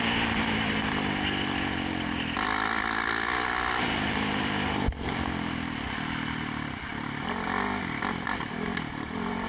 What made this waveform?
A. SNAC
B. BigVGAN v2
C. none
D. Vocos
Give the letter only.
B